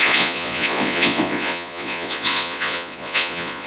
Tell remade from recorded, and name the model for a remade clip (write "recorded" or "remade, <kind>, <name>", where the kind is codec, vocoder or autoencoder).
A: remade, vocoder, Vocos